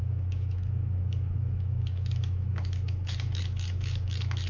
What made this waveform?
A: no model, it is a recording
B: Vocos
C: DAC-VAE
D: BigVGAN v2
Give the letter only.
C